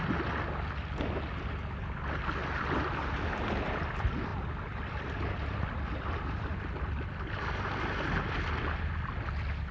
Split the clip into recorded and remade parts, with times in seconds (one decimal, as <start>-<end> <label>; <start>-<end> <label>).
0.0-4.3 recorded; 4.3-7.4 remade; 7.4-9.7 recorded